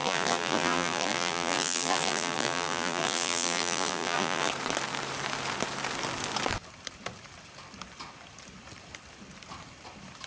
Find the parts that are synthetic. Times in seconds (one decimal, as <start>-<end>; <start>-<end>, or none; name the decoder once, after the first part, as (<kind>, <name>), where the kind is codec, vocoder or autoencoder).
0.0-4.5 (vocoder, BigVGAN v2)